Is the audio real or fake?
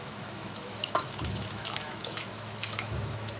fake